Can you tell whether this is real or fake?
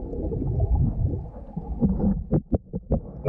real